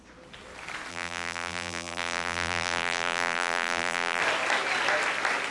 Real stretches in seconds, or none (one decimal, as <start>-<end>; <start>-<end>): 0.0-0.9; 4.2-5.5